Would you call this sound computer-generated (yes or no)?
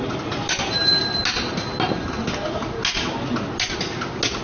no